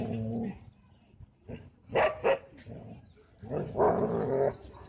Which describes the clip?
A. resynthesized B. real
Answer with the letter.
B